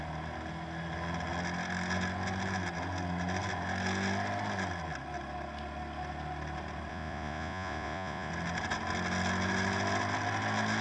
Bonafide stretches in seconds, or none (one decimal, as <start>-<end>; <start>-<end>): 0.0-6.9; 8.3-10.8